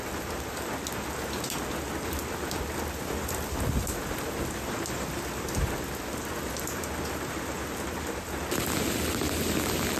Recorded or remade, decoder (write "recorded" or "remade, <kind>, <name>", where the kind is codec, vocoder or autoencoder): recorded